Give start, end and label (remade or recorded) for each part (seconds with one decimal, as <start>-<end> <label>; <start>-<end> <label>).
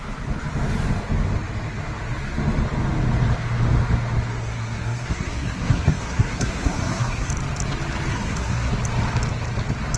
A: 0.0-4.3 recorded; 4.3-7.3 remade; 7.3-8.1 recorded; 8.1-8.7 remade; 8.7-10.0 recorded